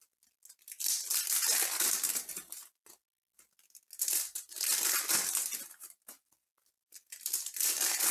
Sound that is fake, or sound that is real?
real